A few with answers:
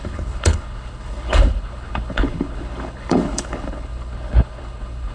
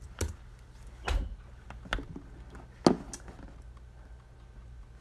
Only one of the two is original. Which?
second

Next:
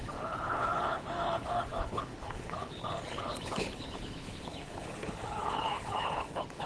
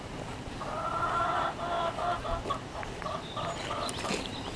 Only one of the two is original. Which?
second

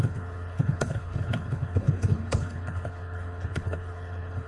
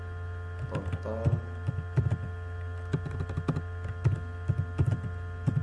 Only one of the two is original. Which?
second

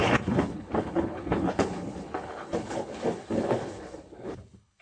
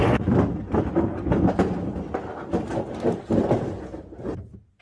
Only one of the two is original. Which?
second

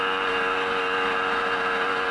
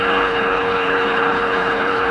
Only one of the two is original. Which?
first